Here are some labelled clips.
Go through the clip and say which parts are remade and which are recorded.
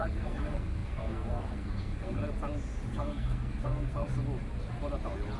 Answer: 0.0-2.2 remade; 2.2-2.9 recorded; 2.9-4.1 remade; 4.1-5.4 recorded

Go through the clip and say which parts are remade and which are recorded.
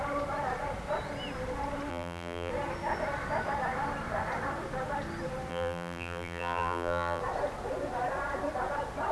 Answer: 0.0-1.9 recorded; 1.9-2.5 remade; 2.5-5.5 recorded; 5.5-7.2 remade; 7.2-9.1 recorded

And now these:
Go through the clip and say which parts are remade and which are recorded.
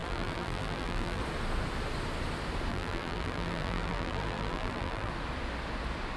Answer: 0.0-1.2 remade; 1.2-2.7 recorded; 2.7-5.1 remade; 5.1-6.2 recorded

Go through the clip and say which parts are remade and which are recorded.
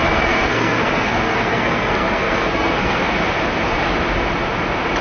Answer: 0.0-3.0 remade; 3.0-5.0 recorded